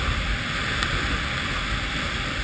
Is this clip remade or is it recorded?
remade